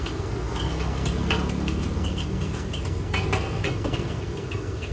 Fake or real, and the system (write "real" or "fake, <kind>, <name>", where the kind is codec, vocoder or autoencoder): fake, codec, SNAC